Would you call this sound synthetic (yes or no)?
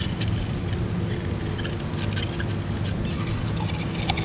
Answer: no